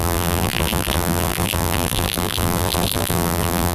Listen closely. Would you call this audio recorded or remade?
remade